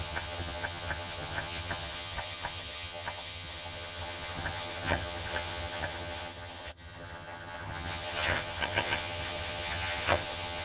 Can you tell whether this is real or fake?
fake